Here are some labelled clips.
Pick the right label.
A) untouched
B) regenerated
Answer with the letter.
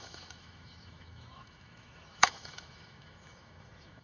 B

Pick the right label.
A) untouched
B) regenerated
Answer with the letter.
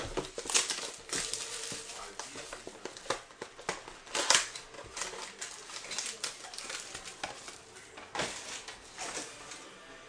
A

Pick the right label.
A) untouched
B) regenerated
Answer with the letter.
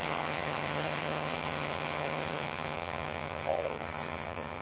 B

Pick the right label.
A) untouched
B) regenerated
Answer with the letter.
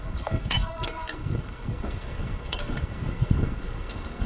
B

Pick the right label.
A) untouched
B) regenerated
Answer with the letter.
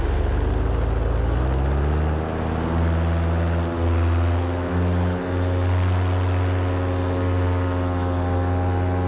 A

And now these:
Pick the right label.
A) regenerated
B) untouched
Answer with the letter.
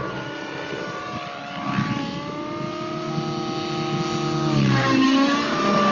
B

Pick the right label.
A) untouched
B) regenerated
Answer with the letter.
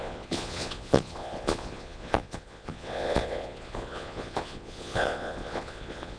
B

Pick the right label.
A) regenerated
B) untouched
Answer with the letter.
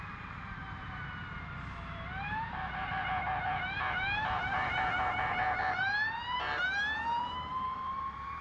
A